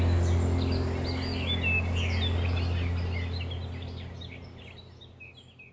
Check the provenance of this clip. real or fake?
real